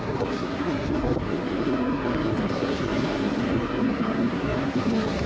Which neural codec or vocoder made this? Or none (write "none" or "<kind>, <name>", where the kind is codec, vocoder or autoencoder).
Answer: codec, SNAC